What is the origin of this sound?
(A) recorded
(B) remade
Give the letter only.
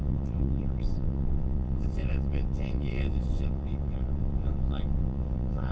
B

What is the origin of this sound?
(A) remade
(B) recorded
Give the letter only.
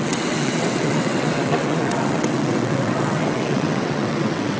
A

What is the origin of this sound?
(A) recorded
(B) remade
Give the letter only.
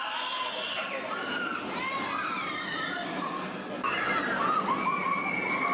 A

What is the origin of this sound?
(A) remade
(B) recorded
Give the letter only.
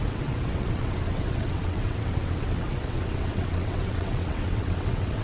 A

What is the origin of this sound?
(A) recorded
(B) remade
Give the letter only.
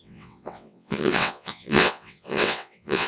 B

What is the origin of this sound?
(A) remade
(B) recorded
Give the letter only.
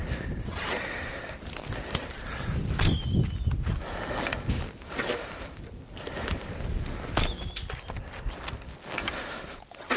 B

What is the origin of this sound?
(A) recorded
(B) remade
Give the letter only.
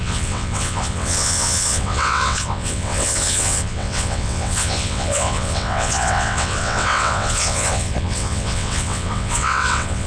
B